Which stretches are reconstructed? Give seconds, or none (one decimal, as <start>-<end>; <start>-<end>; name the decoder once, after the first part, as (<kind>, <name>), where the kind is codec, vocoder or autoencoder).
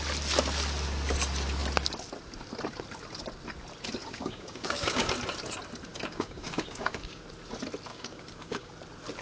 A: 4.0-5.1 (codec, DAC); 5.9-7.2; 7.9-8.7